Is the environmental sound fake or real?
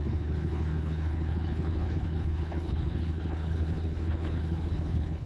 fake